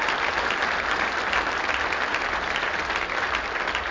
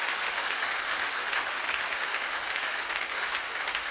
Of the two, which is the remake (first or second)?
second